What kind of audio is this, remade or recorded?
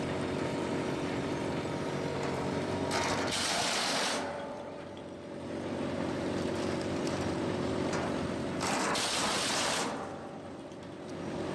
remade